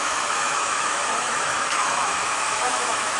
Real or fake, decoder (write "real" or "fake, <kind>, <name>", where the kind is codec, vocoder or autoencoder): fake, autoencoder, DAC-VAE